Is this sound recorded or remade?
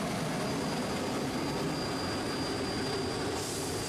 recorded